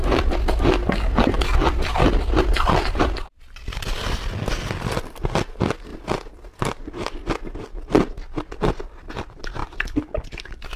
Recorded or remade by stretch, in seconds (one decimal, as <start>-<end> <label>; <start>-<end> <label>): 0.0-9.6 recorded; 9.6-10.8 remade